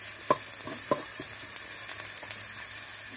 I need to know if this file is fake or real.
real